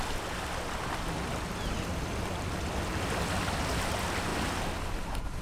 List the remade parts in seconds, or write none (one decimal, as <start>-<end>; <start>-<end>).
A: none